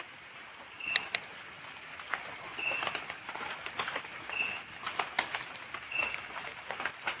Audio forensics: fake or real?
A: real